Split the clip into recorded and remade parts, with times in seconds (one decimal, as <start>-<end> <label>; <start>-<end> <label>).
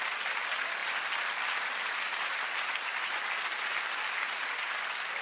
0.0-0.8 remade; 0.8-3.9 recorded; 3.9-5.2 remade